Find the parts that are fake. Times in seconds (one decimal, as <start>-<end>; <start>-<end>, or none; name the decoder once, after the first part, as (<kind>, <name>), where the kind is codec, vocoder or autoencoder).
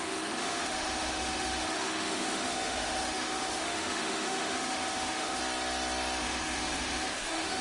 0.0-5.4 (autoencoder, DAC-VAE); 6.2-7.6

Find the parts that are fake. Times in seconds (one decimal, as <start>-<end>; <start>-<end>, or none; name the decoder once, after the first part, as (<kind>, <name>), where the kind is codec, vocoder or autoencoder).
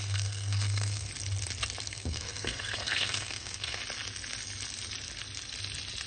0.0-1.1 (codec, SNAC); 1.9-3.8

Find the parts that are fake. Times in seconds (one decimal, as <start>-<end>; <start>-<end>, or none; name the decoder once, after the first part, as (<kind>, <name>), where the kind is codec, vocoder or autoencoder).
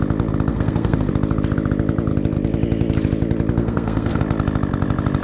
0.5-1.1 (codec, SNAC); 3.6-4.2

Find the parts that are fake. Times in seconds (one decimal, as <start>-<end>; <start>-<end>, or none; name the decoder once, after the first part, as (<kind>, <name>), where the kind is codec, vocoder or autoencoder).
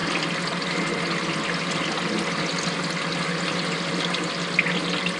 none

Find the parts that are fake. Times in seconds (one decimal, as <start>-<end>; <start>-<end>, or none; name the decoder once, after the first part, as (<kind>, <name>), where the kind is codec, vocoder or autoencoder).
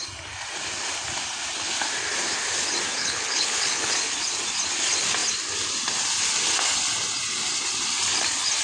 3.0-3.9 (codec, HILCodec)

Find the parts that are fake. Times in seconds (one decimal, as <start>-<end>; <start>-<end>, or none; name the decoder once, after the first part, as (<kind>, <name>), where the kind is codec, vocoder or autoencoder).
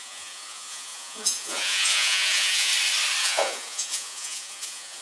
0.0-2.7 (vocoder, Vocos); 3.2-5.0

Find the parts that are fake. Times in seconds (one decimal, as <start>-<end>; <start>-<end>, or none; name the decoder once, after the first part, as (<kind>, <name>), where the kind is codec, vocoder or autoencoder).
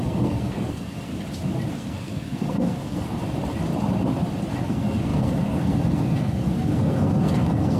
0.0-1.1 (codec, SNAC); 1.7-3.2; 4.6-7.8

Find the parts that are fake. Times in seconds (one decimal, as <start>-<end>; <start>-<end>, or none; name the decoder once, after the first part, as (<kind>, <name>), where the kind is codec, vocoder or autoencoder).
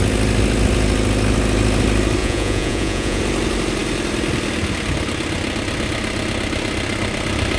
2.2-3.2 (vocoder, Vocos)